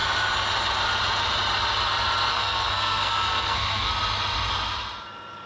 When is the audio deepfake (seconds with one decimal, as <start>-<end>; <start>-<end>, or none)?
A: 2.3-3.9